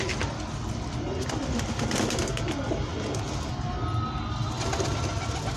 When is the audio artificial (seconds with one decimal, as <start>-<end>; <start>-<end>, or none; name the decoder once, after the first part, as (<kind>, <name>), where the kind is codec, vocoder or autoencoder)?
none